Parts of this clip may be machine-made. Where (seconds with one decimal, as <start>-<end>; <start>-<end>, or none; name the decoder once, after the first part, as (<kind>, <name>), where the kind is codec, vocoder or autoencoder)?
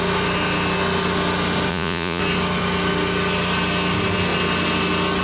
1.7-2.2 (vocoder, Vocos)